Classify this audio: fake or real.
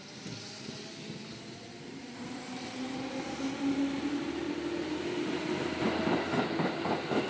real